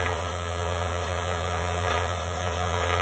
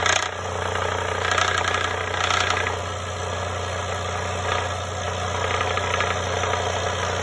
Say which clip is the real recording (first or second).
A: second